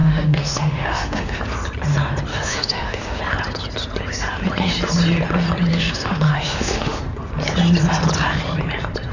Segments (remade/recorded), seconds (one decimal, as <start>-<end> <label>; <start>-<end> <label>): 0.0-1.4 remade; 1.4-2.3 recorded; 2.3-3.2 remade; 3.2-5.7 recorded; 5.7-7.0 remade; 7.0-9.1 recorded